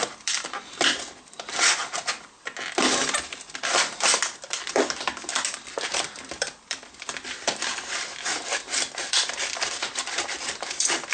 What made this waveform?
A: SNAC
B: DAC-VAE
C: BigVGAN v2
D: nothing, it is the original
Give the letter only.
C